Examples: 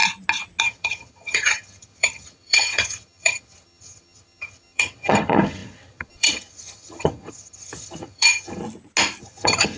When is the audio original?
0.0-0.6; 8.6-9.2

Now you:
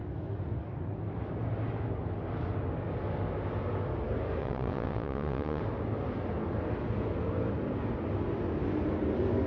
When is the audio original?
0.0-4.4; 5.6-9.5

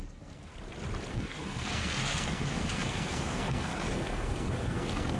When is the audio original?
0.5-1.1

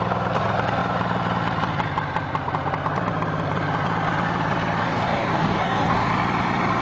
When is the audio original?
0.0-4.8; 6.1-6.8

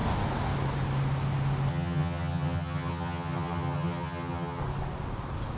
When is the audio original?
0.0-1.7; 4.6-5.6